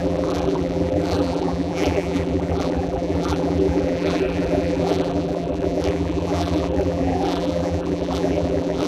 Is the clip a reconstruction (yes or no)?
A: yes